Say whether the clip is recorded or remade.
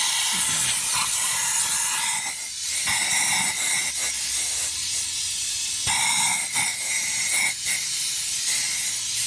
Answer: recorded